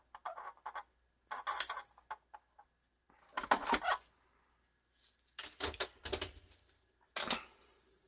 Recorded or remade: recorded